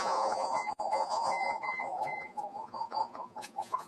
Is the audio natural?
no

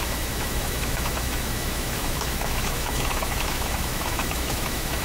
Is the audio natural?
no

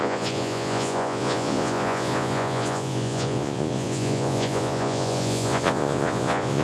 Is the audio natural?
no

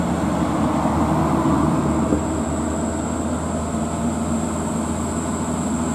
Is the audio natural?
yes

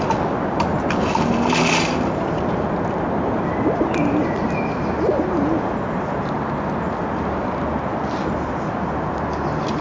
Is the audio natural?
yes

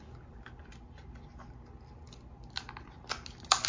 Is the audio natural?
yes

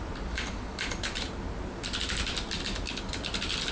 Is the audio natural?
yes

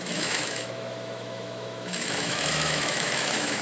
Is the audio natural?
no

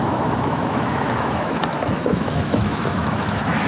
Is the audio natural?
no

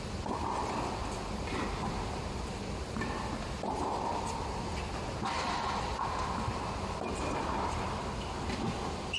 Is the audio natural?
yes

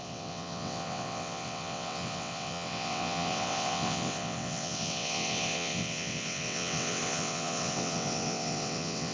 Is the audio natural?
no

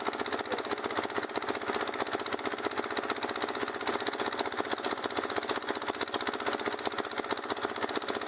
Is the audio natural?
yes